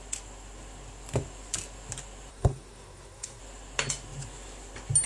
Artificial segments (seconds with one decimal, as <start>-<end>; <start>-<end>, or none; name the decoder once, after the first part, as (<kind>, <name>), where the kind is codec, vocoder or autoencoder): 2.3-3.4 (codec, SNAC)